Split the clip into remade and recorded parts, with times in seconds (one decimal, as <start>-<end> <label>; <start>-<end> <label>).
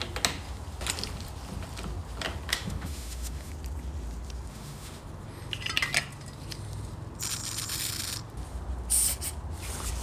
0.0-2.5 recorded; 2.5-3.5 remade; 3.5-4.5 recorded; 4.5-5.0 remade; 5.0-10.0 recorded